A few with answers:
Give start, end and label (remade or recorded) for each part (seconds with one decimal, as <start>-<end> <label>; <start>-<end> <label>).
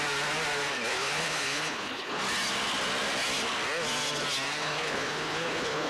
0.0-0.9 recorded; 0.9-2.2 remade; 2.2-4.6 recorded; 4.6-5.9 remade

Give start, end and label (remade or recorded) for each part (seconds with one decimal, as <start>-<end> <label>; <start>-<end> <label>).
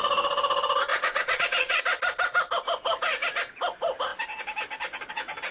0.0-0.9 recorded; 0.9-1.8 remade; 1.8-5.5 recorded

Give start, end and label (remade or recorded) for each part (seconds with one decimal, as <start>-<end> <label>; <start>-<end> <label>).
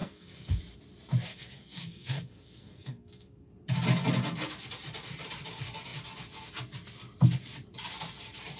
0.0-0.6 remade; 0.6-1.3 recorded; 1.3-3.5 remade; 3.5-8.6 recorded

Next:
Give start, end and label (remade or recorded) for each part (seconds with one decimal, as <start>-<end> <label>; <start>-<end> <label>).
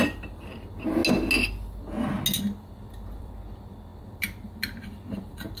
0.0-1.0 remade; 1.0-2.4 recorded; 2.4-5.6 remade